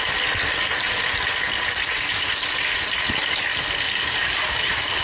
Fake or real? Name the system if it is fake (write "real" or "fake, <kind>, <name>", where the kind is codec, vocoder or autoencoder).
real